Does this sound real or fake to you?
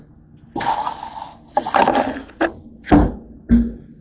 real